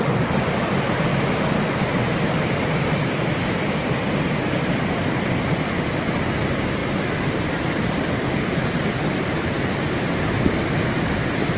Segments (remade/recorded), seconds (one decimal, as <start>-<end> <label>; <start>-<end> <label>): 0.0-11.6 remade